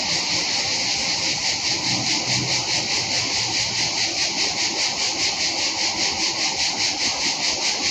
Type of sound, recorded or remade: recorded